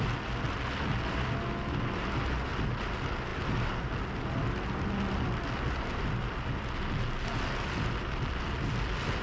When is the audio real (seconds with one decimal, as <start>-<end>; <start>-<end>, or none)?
0.0-9.2

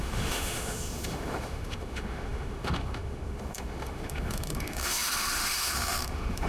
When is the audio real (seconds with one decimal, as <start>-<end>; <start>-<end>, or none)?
none

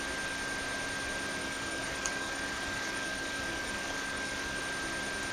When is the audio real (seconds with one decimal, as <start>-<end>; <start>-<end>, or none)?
0.0-1.4; 4.6-5.3

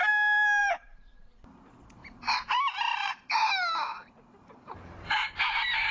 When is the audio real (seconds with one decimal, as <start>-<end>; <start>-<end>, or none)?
0.0-0.6; 1.3-2.0; 3.1-3.9; 5.4-5.9

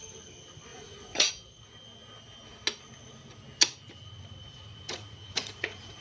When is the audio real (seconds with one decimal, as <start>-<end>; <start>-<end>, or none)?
0.0-0.7; 1.3-4.4

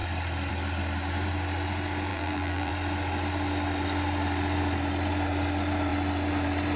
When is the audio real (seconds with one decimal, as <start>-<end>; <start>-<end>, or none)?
0.0-2.1; 2.7-6.8